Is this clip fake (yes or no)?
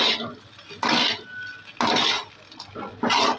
no